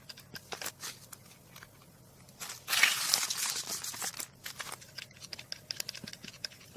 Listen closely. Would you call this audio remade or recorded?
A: recorded